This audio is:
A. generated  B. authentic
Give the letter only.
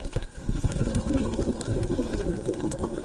A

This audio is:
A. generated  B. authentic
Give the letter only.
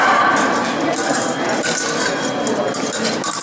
B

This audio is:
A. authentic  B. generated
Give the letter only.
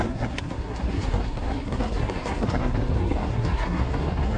B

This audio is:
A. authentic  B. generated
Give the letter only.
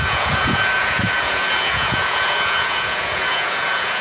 B